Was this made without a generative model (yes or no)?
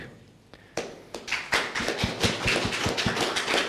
yes